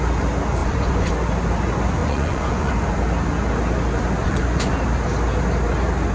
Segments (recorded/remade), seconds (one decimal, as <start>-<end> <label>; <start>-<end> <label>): 0.0-0.6 recorded; 0.6-1.1 remade; 1.1-2.0 recorded; 2.0-2.7 remade; 2.7-4.2 recorded; 4.2-4.7 remade; 4.7-6.1 recorded